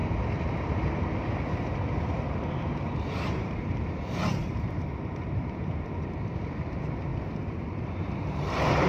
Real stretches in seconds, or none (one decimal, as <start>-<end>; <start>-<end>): 0.0-3.4